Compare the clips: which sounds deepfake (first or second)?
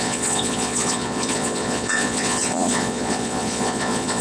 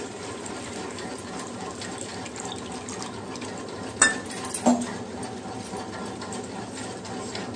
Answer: first